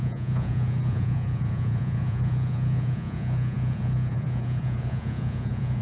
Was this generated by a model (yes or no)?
yes